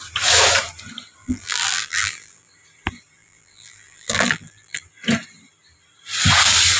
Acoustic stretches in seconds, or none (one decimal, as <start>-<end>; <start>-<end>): 0.0-1.2; 2.5-3.2; 4.8-6.8